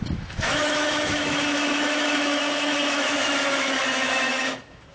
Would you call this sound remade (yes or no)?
yes